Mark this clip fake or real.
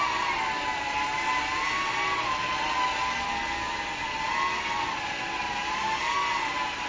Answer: real